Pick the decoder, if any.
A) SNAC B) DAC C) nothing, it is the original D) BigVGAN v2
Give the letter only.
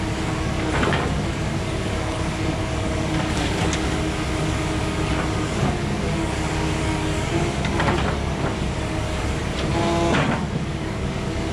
B